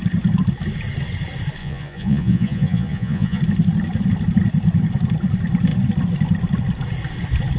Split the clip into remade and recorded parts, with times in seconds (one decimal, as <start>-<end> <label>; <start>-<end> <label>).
0.0-1.6 recorded; 1.6-3.4 remade; 3.4-7.6 recorded